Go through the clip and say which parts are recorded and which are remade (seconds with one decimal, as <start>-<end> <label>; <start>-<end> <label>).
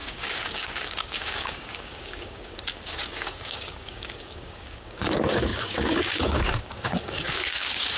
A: 0.0-8.0 remade